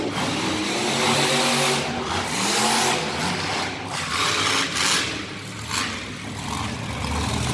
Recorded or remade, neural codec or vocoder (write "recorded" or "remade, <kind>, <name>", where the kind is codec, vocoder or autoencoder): recorded